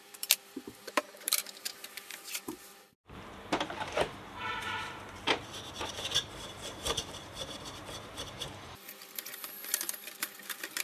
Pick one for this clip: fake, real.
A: fake